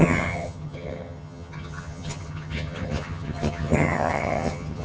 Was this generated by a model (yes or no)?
yes